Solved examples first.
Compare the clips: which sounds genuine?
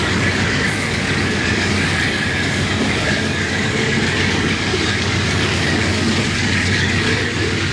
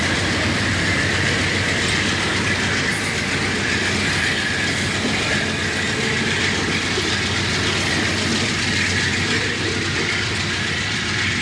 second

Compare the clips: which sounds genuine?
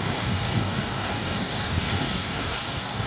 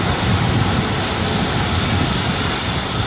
second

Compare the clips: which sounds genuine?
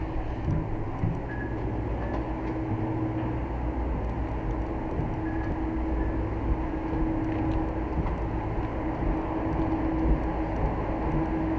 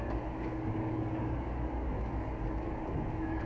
first